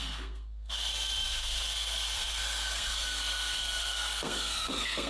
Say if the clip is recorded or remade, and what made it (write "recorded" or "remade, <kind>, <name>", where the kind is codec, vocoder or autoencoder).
remade, codec, SNAC